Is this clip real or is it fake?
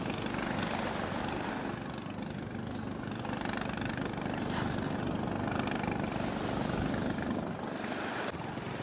real